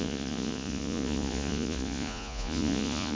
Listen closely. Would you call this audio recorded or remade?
remade